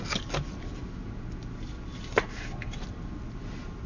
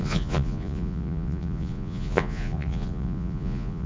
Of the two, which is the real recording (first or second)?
first